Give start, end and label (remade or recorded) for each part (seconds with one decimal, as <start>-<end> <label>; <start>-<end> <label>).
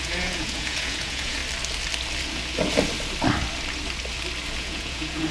0.0-1.4 remade; 1.4-4.6 recorded; 4.6-5.3 remade